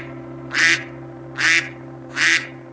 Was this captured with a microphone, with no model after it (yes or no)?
yes